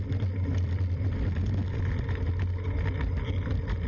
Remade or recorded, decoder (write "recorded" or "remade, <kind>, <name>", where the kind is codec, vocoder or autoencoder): recorded